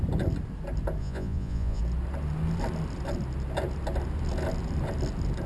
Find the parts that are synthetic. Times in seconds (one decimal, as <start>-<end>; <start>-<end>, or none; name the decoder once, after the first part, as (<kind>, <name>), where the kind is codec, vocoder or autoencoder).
1.0-1.8 (vocoder, Vocos)

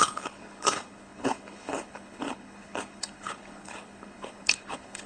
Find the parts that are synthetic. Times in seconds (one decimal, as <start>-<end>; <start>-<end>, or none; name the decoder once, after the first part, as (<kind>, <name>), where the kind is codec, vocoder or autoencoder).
0.0-5.1 (codec, HILCodec)

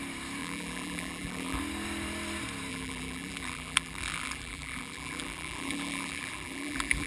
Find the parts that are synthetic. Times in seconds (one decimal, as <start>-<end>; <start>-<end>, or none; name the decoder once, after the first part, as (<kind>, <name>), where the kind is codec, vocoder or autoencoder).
0.4-1.6 (vocoder, BigVGAN v2); 2.7-7.1

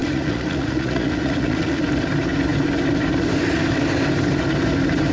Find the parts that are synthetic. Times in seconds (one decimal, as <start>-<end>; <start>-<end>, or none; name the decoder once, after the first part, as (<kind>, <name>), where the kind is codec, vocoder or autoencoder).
0.0-1.8 (vocoder, Vocos)